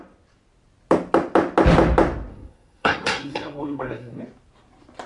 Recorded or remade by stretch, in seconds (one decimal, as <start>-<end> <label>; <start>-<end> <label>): 0.0-2.3 recorded; 2.3-4.2 remade; 4.2-5.1 recorded